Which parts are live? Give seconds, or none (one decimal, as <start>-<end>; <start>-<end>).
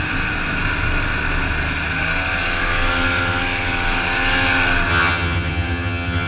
0.0-4.9